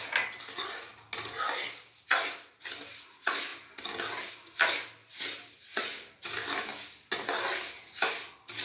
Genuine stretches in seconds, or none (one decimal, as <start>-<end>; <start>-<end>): 0.0-8.6